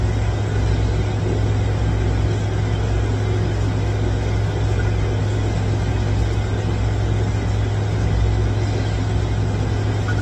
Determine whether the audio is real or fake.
real